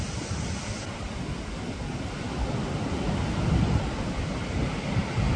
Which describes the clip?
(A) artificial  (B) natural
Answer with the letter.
B